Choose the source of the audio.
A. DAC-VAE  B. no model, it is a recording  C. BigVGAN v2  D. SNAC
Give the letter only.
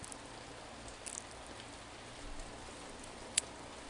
B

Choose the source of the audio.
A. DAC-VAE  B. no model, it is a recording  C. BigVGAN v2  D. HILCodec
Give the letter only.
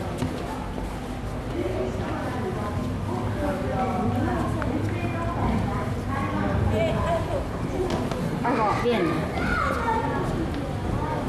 B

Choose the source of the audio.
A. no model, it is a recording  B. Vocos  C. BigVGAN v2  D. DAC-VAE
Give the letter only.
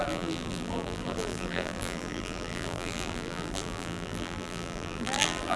C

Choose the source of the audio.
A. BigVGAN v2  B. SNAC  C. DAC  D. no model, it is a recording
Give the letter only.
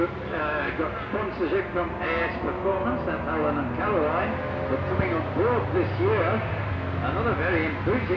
D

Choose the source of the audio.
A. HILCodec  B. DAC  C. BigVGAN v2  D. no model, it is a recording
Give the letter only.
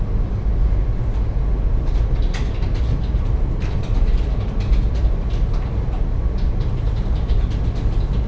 D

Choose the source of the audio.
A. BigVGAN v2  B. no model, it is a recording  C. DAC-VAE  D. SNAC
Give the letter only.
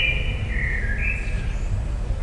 B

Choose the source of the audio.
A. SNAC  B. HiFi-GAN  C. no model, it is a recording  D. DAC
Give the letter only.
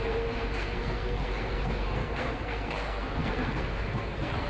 A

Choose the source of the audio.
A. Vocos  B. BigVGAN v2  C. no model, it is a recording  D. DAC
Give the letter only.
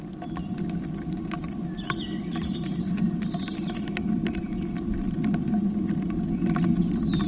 C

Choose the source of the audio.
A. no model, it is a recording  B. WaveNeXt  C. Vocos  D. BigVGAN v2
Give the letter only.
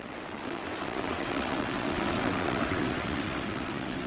B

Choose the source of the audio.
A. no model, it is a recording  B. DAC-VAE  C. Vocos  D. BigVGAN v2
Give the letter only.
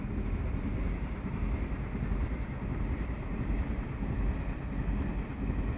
A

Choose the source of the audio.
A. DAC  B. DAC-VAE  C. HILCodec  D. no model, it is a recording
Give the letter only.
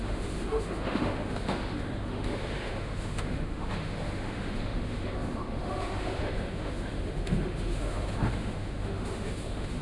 B